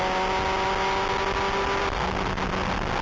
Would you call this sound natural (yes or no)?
yes